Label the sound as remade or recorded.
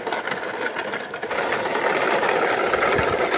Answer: recorded